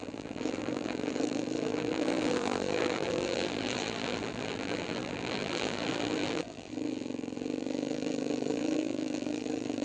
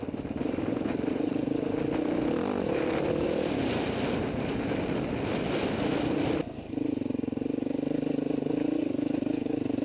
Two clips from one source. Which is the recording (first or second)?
second